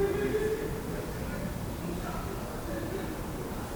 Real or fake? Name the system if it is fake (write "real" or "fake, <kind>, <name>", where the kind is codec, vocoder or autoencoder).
real